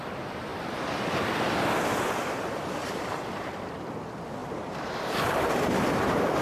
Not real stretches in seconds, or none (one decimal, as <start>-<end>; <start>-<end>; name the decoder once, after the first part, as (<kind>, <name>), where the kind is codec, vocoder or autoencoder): 2.8-3.5 (vocoder, BigVGAN v2); 4.4-5.4